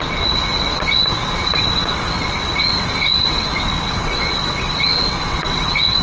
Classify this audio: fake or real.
fake